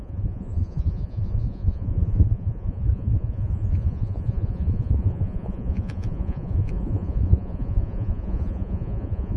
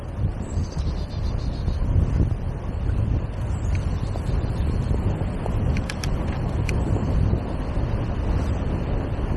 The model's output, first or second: first